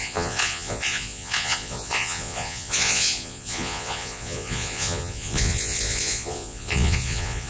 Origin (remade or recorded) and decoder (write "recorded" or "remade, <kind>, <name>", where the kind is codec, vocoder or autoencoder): remade, vocoder, Vocos